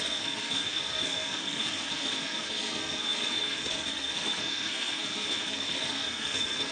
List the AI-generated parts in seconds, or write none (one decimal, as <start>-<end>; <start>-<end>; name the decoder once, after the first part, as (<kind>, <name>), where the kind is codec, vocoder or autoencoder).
0.0-6.7 (codec, SNAC)